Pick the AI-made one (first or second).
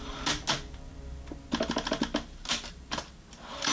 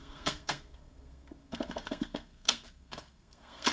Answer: second